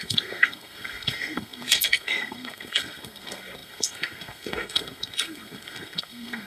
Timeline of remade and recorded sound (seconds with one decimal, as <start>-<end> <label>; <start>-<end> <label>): 0.0-6.5 remade